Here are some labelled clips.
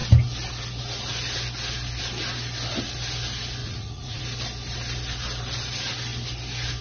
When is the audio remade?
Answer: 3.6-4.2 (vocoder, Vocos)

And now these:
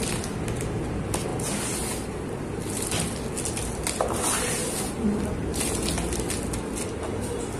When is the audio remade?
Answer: none

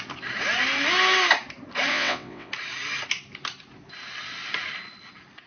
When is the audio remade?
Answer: 1.9-2.5 (vocoder, WaveNeXt)

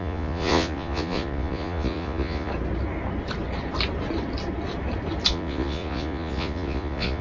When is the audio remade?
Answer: 0.0-2.5 (vocoder, Vocos); 5.3-7.2